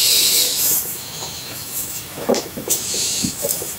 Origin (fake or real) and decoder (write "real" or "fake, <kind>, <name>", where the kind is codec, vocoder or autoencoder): fake, autoencoder, DAC-VAE